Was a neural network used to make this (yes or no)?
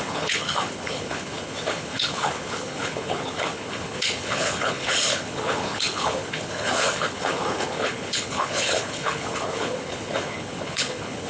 yes